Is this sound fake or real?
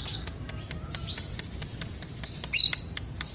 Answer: real